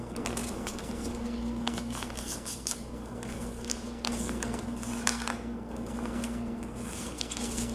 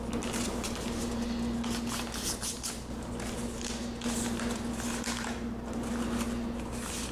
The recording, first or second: second